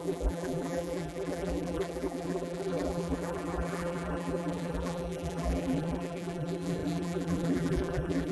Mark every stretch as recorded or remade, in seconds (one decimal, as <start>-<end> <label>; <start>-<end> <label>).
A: 0.0-8.3 remade